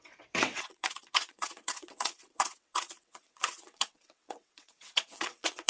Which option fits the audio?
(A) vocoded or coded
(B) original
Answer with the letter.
A